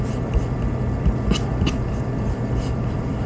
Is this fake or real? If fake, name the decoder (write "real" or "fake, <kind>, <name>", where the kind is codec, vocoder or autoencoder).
fake, vocoder, BigVGAN v2